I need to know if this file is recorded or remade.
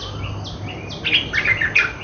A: recorded